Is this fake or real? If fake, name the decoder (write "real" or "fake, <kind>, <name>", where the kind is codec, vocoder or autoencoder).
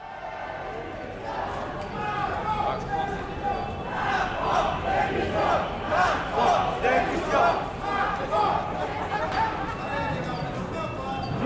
real